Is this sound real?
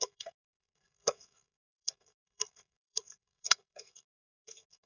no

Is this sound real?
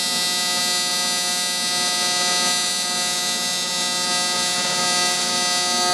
yes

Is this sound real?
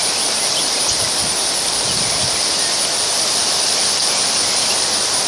yes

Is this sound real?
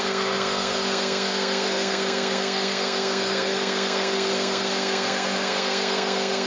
no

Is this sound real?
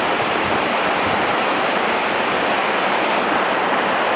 yes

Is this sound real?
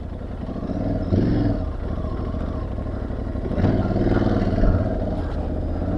yes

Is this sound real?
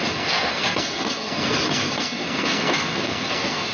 no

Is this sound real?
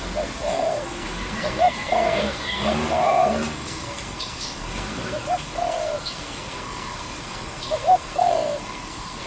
no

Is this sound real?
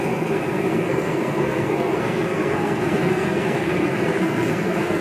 no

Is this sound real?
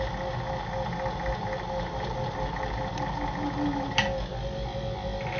yes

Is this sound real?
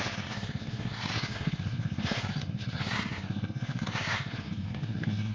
no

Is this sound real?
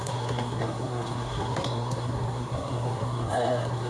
no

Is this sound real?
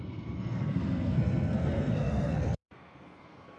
no